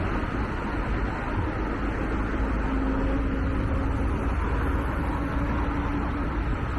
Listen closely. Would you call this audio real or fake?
real